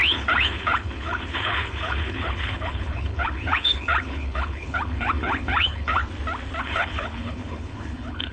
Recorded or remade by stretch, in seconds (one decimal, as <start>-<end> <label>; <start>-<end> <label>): 0.0-6.0 remade; 6.0-6.6 recorded; 6.6-8.3 remade